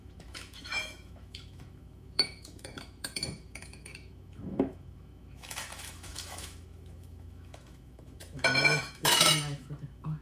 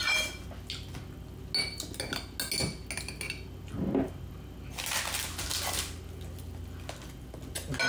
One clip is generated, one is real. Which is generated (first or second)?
first